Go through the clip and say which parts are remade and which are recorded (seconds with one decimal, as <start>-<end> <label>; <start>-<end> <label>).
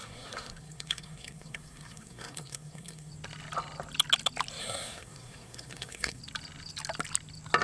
0.0-3.1 remade; 3.1-4.6 recorded; 4.6-6.2 remade; 6.2-7.6 recorded